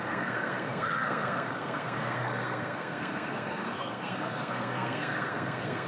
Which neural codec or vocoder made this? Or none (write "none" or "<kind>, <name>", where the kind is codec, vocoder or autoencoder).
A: codec, SNAC